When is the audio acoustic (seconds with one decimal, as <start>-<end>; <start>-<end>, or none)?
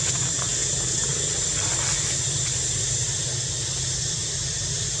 0.0-5.0